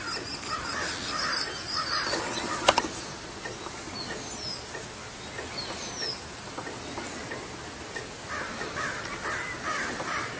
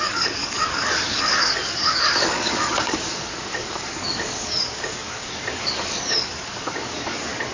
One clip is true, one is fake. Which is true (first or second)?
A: first